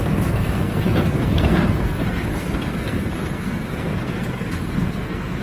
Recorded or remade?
remade